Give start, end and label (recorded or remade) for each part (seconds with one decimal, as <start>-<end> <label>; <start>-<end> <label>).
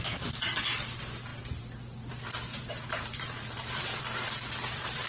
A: 0.0-2.5 recorded; 2.5-5.1 remade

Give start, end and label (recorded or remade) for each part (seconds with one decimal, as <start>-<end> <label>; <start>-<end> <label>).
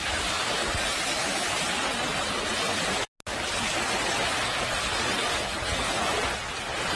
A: 0.0-7.0 recorded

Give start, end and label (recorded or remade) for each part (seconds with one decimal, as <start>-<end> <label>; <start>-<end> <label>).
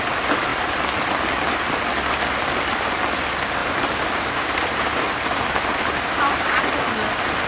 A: 0.0-3.6 recorded; 3.6-6.6 remade; 6.6-7.5 recorded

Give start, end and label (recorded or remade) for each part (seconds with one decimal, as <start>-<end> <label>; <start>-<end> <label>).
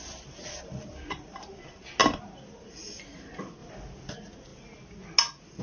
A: 0.0-5.6 recorded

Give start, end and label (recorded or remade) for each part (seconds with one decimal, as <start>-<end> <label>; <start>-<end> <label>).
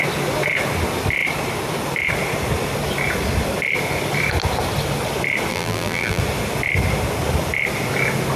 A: 0.0-5.5 recorded; 5.5-6.2 remade; 6.2-8.4 recorded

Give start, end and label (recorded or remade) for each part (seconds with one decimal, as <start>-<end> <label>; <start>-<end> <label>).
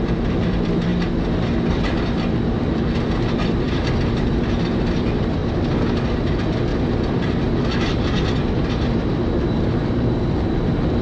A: 0.0-0.9 remade; 0.9-1.7 recorded; 1.7-5.4 remade; 5.4-6.3 recorded; 6.3-11.0 remade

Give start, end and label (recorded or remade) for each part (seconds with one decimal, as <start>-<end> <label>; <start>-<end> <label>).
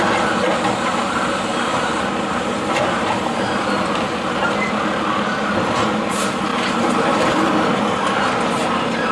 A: 0.0-1.5 recorded; 1.5-3.4 remade; 3.4-6.5 recorded; 6.5-7.5 remade; 7.5-9.1 recorded